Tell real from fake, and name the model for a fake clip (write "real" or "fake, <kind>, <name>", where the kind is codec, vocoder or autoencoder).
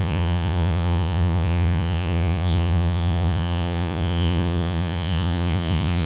fake, vocoder, Vocos